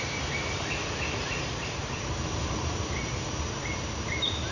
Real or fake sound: real